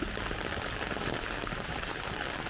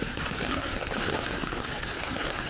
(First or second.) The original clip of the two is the first